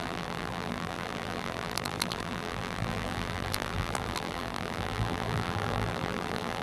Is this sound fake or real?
fake